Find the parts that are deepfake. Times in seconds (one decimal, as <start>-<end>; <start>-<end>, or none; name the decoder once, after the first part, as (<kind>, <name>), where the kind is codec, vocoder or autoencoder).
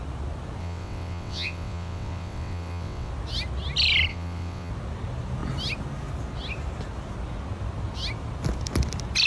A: 0.6-3.1 (vocoder, WaveNeXt); 4.1-4.7